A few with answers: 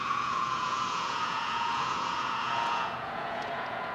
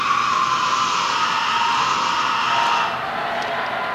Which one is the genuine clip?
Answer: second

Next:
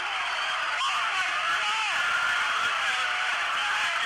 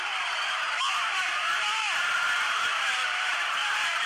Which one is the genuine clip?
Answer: first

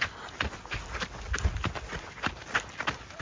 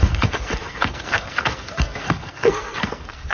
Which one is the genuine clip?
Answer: first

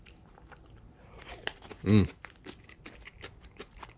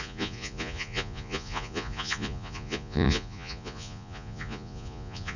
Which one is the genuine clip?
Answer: first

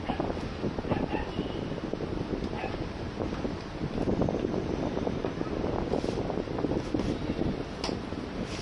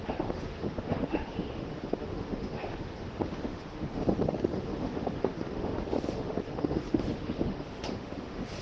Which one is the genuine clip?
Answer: first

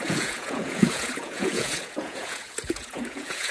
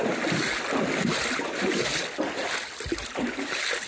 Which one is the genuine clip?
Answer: second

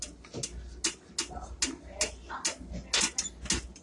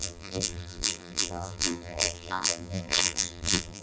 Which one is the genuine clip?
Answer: first